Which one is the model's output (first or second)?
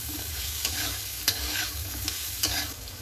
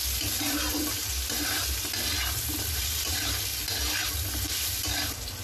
first